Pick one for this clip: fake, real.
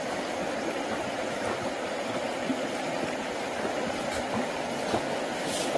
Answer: real